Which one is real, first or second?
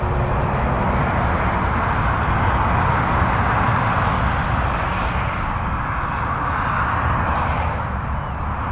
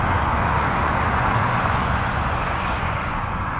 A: first